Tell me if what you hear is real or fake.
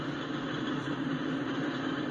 real